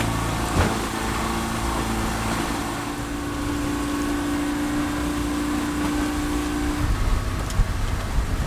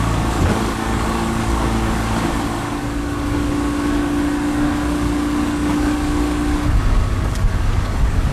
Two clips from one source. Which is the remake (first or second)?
second